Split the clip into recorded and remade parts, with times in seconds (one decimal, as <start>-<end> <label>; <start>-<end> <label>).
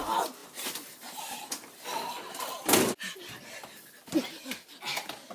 0.0-5.3 recorded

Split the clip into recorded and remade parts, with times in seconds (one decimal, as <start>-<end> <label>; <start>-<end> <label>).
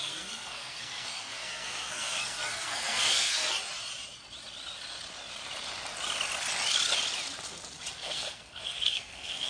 0.0-3.4 remade; 3.4-7.9 recorded; 7.9-9.5 remade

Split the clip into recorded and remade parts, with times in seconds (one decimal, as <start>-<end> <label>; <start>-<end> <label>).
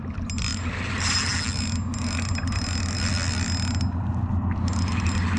0.0-5.4 recorded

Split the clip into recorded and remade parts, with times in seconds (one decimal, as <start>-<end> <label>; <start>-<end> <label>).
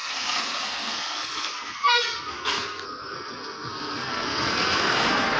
0.0-5.4 remade